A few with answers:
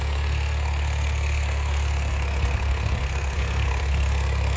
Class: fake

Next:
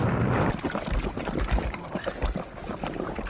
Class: real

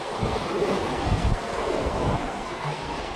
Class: fake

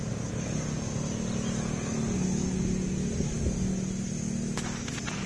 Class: real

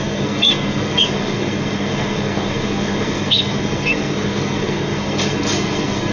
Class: fake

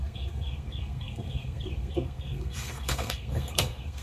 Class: fake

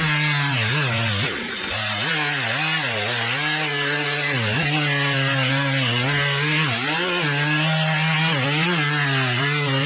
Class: real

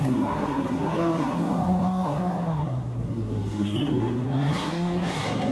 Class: fake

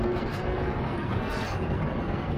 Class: fake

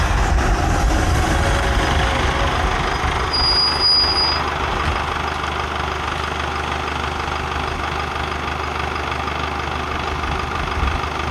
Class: real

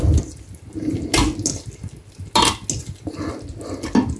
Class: real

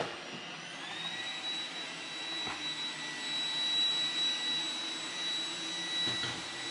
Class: real